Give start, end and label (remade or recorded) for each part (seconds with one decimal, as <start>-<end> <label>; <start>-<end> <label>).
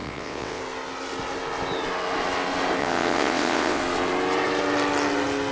0.0-0.6 remade; 0.6-2.8 recorded; 2.8-3.8 remade; 3.8-5.5 recorded